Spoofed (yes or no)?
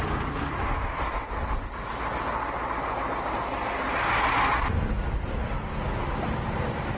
no